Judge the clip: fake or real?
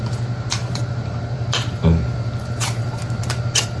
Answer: fake